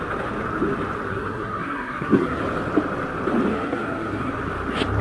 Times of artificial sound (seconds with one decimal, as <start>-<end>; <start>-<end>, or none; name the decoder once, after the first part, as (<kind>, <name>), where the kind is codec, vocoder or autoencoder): 1.1-2.4 (codec, SNAC); 3.5-4.3